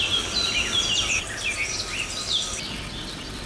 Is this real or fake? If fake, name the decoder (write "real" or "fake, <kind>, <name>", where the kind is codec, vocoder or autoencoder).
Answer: real